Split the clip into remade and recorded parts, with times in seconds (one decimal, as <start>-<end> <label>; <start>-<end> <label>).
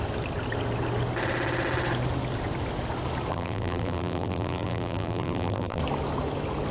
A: 0.0-3.3 recorded; 3.3-5.8 remade; 5.8-6.7 recorded